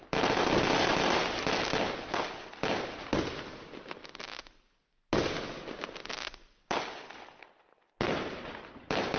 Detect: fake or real real